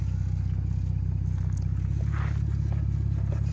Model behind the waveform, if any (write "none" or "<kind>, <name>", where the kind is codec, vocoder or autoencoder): none